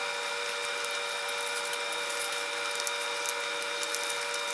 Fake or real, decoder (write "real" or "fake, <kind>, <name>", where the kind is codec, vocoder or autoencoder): real